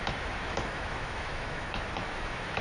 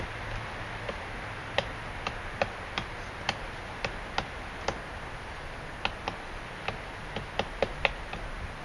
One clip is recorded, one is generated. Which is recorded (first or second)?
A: second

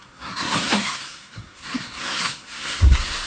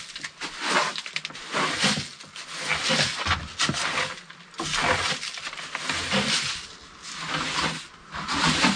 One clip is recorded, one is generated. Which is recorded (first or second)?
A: second